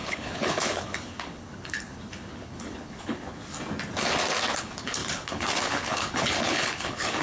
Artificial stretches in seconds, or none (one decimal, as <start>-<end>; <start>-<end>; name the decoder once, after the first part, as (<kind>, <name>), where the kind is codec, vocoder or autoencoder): 0.0-3.4 (codec, HILCodec); 4.6-7.2